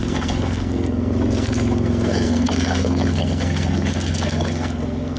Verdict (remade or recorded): remade